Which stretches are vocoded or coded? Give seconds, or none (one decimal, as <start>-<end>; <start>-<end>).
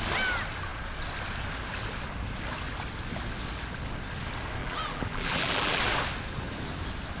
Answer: 4.6-5.8